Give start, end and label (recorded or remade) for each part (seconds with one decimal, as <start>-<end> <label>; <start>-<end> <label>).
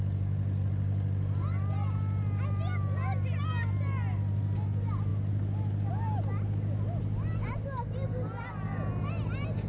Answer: 0.0-9.7 recorded